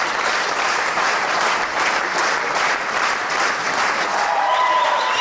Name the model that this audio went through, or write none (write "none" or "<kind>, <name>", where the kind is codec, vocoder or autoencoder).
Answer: vocoder, BigVGAN v2